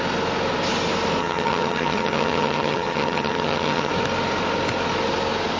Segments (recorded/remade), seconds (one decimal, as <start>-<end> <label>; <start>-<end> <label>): 0.0-1.2 recorded; 1.2-3.9 remade; 3.9-5.6 recorded